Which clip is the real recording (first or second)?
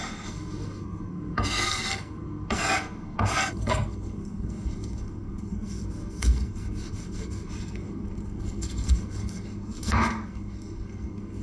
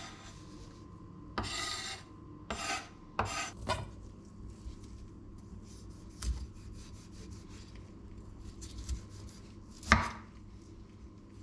second